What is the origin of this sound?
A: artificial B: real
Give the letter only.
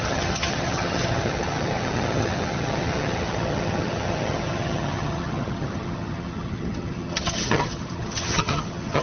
A